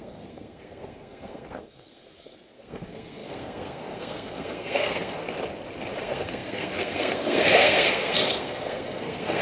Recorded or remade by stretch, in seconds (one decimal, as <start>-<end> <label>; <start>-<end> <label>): 0.0-5.2 remade; 5.2-6.0 recorded; 6.0-9.4 remade